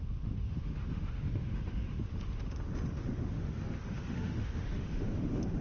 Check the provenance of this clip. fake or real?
fake